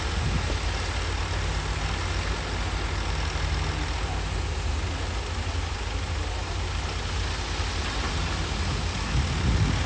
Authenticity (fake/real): real